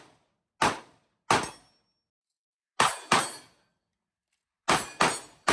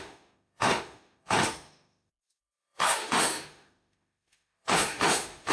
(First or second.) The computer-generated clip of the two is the second